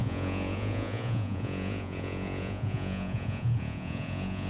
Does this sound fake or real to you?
fake